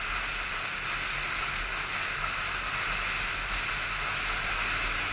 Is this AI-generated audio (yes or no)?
no